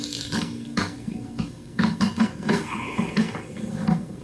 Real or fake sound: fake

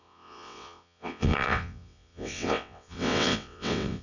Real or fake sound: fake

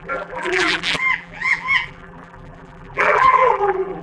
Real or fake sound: fake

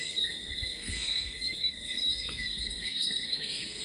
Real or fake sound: fake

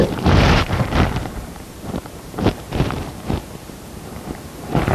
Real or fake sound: fake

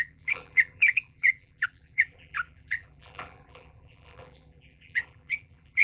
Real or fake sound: fake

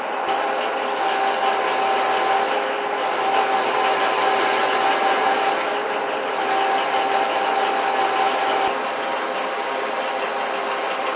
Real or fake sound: real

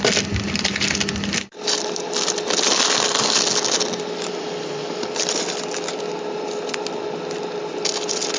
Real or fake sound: real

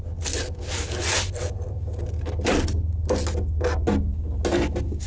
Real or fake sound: real